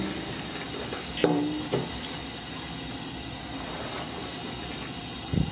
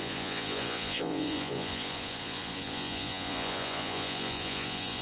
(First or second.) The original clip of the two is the first